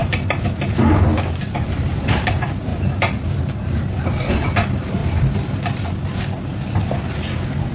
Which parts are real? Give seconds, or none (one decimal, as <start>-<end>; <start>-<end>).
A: 0.0-7.7